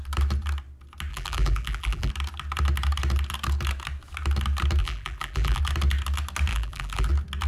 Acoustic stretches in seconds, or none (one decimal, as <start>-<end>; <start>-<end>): 0.0-1.1; 2.1-4.8; 5.6-6.5; 7.1-7.5